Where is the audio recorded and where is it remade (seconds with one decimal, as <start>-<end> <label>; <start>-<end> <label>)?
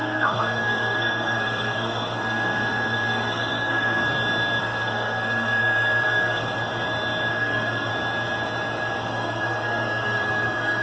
0.0-4.0 remade; 4.0-4.6 recorded; 4.6-6.6 remade; 6.6-7.3 recorded; 7.3-7.9 remade; 7.9-9.1 recorded; 9.1-10.8 remade